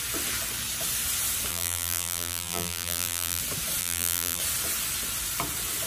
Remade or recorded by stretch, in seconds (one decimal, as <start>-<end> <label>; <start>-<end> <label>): 0.0-1.5 recorded; 1.5-3.4 remade; 3.4-3.8 recorded; 3.8-4.4 remade; 4.4-5.9 recorded